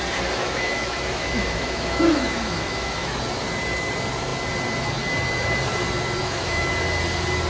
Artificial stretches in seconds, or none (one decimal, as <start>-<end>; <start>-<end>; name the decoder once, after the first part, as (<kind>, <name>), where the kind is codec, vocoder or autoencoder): 0.4-3.2 (autoencoder, DAC-VAE); 6.2-6.7